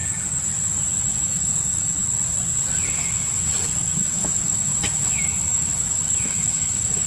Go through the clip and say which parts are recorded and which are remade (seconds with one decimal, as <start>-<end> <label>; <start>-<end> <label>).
0.0-1.2 recorded; 1.2-2.0 remade; 2.0-4.0 recorded; 4.0-7.1 remade